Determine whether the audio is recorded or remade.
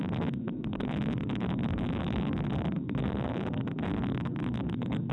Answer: remade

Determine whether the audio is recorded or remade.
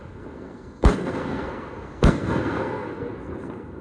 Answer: remade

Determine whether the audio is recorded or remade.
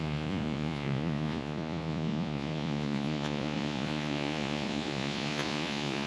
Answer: remade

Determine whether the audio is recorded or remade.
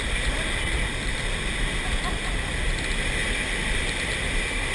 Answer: recorded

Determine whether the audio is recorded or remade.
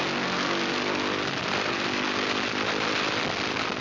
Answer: recorded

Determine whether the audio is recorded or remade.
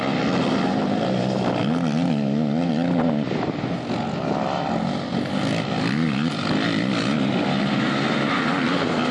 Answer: recorded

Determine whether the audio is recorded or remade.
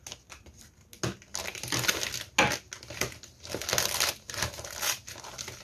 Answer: recorded